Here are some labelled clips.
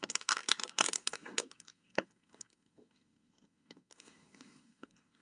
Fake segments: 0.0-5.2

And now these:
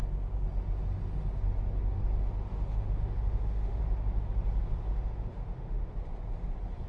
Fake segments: 2.5-3.8; 4.8-5.9

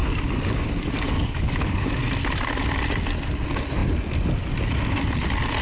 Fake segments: 0.0-1.9

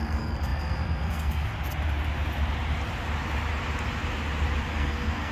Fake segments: 0.0-1.5; 4.7-5.3